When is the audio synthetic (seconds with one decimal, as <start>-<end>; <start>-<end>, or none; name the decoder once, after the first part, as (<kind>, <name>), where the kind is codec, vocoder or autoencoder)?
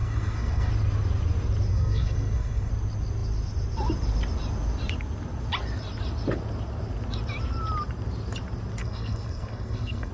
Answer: 0.0-0.7 (codec, SNAC); 1.7-2.7; 8.8-10.1